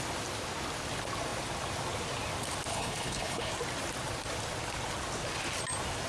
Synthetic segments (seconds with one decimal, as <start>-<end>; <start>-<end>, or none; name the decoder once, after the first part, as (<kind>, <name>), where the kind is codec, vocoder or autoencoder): 2.7-3.5 (codec, HILCodec)